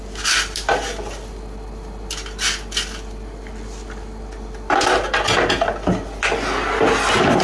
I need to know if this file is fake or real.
real